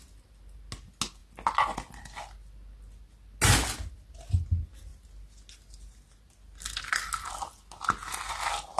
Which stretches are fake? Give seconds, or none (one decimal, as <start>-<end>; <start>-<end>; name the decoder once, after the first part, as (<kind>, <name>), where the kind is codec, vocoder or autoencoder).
none